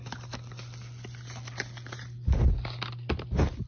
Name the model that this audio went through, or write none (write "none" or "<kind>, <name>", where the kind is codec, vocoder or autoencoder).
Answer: none